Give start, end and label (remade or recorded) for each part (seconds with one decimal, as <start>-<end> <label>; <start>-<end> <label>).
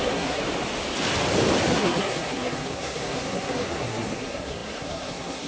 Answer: 0.0-0.4 remade; 0.4-1.7 recorded; 1.7-5.5 remade